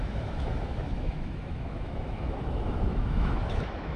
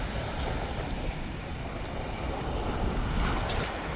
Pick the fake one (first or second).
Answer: first